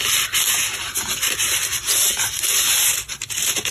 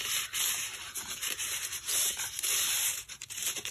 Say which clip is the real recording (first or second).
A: first